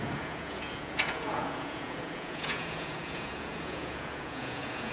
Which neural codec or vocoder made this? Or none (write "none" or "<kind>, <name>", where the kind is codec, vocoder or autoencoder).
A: vocoder, Vocos